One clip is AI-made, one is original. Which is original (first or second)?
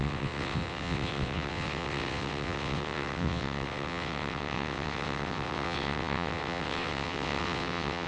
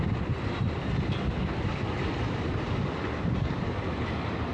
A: second